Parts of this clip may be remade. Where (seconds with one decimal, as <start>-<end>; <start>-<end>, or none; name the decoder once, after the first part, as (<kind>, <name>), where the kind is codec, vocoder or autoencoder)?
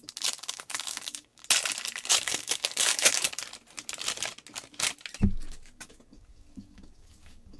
0.0-1.4 (codec, DAC); 2.1-3.4; 5.5-7.6